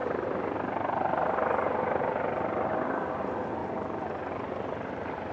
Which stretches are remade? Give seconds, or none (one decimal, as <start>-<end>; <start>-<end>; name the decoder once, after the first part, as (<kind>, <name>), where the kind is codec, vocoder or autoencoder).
none